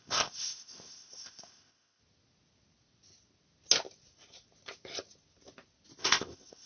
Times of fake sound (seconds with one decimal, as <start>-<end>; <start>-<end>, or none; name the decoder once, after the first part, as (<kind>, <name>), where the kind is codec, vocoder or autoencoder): 0.0-2.0 (codec, ZipCodec); 6.0-6.7